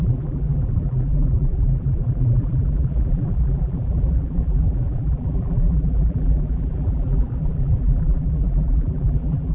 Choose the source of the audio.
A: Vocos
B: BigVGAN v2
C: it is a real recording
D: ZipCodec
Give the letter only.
B